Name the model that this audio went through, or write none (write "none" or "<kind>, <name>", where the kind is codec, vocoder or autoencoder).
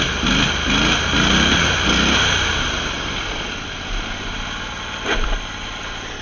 none